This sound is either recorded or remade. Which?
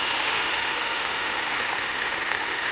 remade